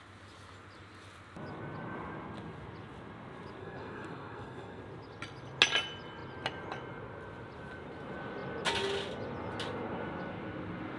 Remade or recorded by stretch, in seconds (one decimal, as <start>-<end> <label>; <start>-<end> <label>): 0.0-3.6 recorded; 3.6-4.8 remade; 4.8-11.0 recorded